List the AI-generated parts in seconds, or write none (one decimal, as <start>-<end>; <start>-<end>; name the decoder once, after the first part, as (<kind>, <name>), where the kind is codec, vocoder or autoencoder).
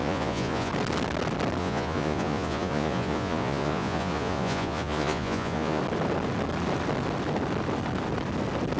0.0-0.7 (vocoder, Vocos); 1.6-5.8